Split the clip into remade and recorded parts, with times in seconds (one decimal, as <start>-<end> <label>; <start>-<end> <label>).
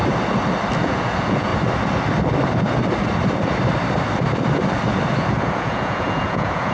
0.0-0.8 recorded; 0.8-1.5 remade; 1.5-5.4 recorded; 5.4-6.7 remade